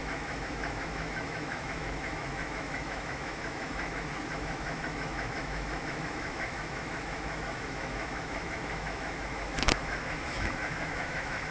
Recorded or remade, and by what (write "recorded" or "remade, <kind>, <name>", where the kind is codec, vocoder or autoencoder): remade, autoencoder, DAC-VAE